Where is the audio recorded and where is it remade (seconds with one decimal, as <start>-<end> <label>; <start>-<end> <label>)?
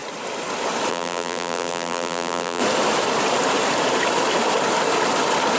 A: 0.0-0.9 recorded; 0.9-2.6 remade; 2.6-5.6 recorded